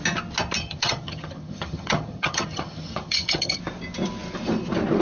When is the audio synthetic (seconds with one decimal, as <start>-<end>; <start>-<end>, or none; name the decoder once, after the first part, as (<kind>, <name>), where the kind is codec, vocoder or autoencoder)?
0.6-3.6 (vocoder, HiFi-GAN)